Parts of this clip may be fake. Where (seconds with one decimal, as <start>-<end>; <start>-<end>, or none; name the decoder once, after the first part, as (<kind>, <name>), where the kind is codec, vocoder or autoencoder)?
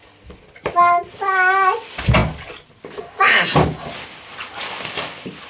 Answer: none